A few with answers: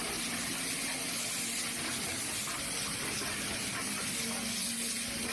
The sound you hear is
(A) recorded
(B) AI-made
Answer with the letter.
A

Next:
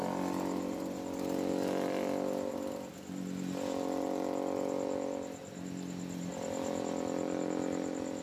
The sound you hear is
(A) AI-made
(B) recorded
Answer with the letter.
B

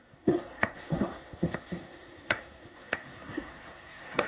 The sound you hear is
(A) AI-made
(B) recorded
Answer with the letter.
A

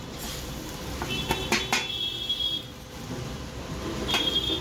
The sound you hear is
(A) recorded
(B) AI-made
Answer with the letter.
A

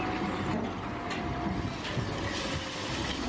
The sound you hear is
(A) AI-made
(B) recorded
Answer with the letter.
B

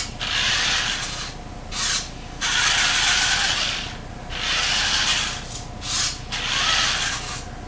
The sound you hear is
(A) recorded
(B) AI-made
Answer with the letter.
A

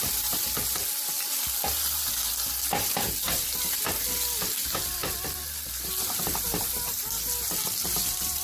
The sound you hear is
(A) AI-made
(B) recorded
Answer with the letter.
B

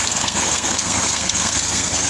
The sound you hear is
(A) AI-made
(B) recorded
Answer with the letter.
A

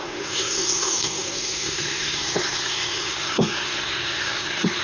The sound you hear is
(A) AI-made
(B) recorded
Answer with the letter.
A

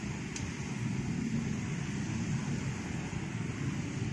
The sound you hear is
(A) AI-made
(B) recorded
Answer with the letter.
B